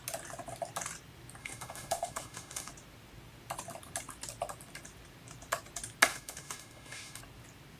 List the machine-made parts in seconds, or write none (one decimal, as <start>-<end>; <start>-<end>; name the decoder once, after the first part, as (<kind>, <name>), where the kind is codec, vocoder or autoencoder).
1.4-2.7 (autoencoder, DAC-VAE); 6.1-7.2